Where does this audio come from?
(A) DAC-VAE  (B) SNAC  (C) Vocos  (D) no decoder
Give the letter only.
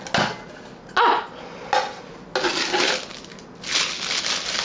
D